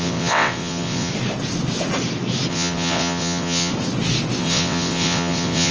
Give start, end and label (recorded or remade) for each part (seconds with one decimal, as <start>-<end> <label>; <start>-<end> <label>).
0.0-1.1 remade; 1.1-2.5 recorded; 2.5-3.7 remade; 3.7-4.4 recorded; 4.4-5.7 remade